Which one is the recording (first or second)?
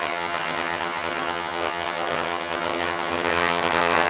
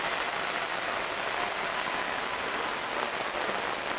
second